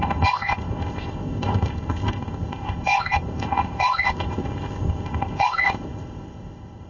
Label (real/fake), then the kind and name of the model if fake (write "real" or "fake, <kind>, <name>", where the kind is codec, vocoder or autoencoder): fake, codec, ZipCodec